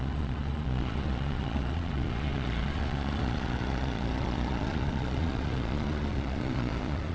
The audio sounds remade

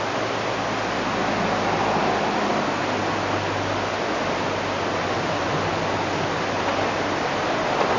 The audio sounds recorded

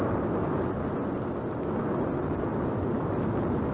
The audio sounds recorded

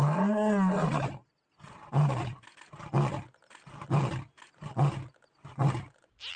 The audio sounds recorded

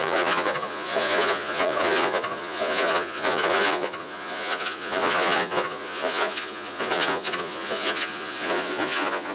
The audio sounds remade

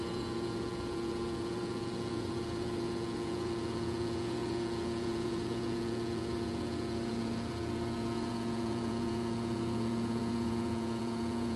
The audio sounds remade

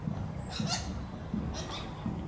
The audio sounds recorded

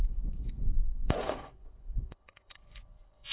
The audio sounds remade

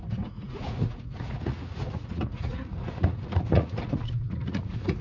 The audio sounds remade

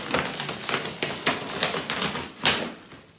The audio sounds recorded